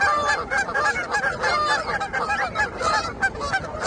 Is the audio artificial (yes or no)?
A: no